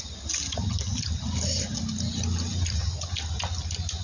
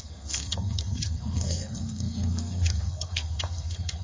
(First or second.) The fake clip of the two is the second